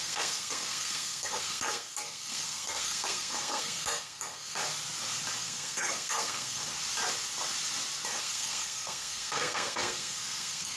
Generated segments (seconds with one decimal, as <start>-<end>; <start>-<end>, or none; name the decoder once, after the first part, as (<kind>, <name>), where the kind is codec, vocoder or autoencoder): 0.0-4.6 (codec, SNAC); 5.4-6.6; 8.2-10.8